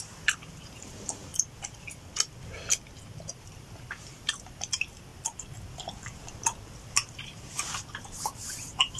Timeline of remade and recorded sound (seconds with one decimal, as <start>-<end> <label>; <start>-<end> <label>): 0.0-1.3 remade; 1.3-3.4 recorded; 3.4-5.1 remade; 5.1-6.8 recorded; 6.8-9.0 remade